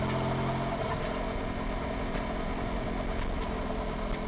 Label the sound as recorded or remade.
recorded